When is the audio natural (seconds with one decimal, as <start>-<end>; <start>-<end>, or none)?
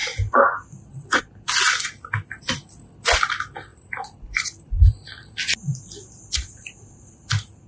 1.2-3.7; 7.1-7.7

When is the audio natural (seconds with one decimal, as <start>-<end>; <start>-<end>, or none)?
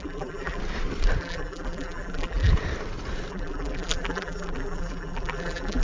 0.6-1.2; 2.5-3.3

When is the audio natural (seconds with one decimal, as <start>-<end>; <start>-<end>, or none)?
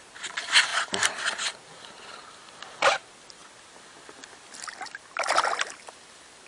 3.4-5.8